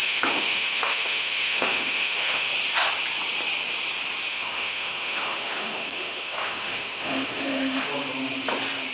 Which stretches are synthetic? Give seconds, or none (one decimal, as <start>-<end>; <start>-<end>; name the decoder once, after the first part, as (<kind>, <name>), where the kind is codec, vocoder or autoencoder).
0.0-2.5 (autoencoder, DAC-VAE); 4.3-7.9